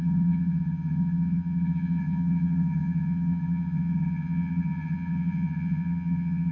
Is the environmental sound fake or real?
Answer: fake